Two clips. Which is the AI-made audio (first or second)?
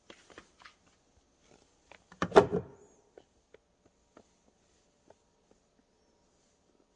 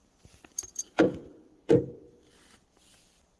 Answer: second